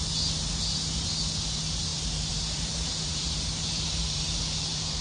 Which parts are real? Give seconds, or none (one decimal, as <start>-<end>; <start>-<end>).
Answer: 0.0-1.9